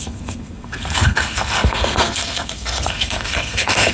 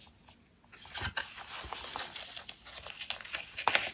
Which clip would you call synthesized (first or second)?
first